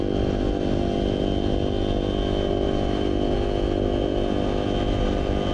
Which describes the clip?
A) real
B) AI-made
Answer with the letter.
A